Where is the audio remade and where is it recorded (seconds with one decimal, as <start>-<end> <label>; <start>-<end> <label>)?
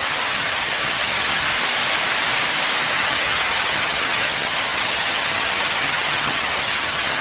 0.0-1.5 remade; 1.5-2.9 recorded; 2.9-7.2 remade